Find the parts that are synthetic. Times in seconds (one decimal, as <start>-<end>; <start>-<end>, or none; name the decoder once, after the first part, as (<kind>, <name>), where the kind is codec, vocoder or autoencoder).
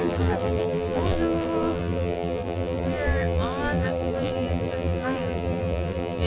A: 0.0-6.3 (vocoder, BigVGAN v2)